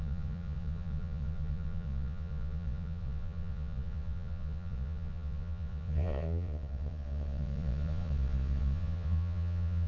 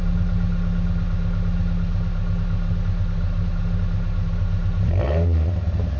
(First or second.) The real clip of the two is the second